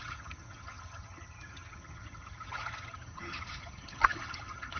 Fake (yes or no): yes